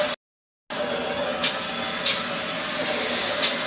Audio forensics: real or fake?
real